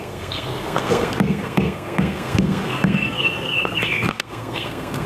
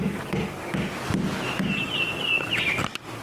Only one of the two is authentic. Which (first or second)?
second